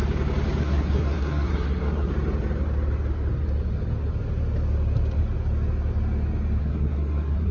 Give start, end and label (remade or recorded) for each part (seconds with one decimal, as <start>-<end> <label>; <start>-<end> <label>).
0.0-0.6 recorded; 0.6-2.1 remade; 2.1-6.6 recorded; 6.6-7.5 remade